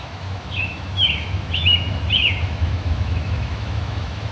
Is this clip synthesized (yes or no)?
yes